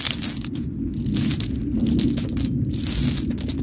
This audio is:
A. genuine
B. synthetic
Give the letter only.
A